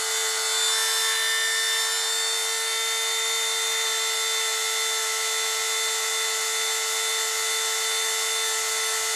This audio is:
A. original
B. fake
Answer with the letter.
A